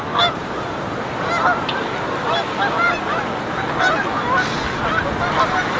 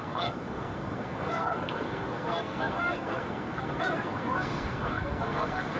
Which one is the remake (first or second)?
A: second